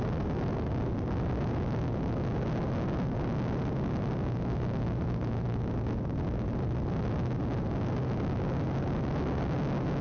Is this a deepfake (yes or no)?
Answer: no